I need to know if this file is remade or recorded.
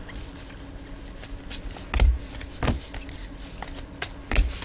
recorded